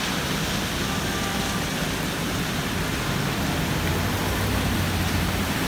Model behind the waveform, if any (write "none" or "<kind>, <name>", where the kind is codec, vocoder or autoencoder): none